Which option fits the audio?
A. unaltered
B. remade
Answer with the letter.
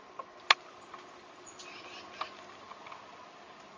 A